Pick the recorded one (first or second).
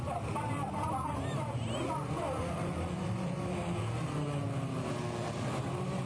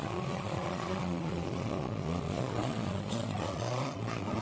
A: first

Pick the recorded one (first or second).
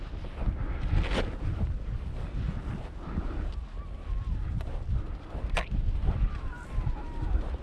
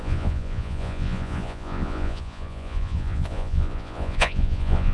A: first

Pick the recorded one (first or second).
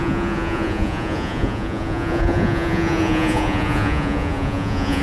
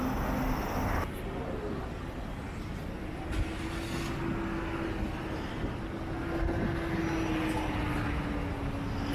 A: second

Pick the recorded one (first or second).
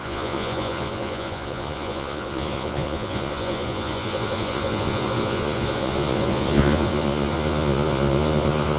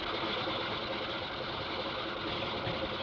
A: second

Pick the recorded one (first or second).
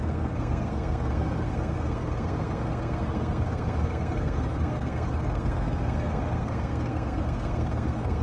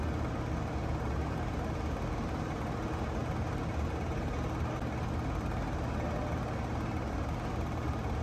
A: second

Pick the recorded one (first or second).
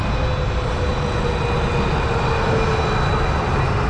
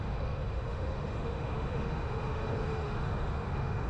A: first